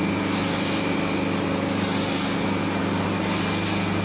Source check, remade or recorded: recorded